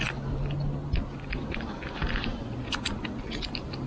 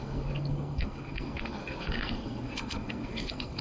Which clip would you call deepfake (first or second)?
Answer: second